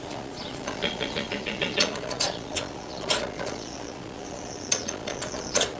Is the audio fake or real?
fake